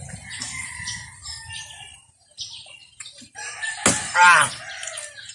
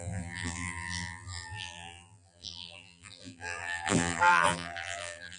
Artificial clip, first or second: second